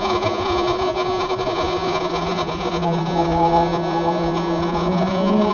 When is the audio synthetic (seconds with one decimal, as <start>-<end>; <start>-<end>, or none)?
0.0-5.5